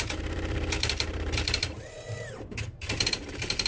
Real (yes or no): no